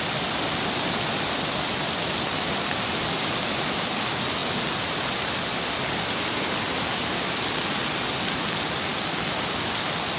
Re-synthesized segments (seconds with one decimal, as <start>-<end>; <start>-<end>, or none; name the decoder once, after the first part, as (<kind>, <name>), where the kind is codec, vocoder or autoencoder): 8.9-10.2 (vocoder, BigVGAN v2)